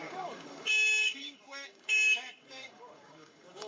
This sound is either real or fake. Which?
fake